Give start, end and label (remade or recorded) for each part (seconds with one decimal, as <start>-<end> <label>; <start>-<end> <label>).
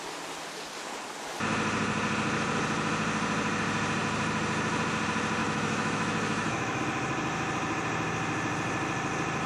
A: 0.0-5.4 recorded; 5.4-6.8 remade; 6.8-9.5 recorded